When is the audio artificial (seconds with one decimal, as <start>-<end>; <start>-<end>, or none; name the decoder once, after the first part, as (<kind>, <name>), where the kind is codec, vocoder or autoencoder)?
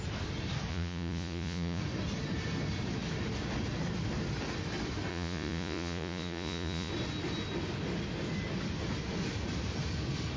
0.7-1.8 (vocoder, Vocos); 5.1-6.9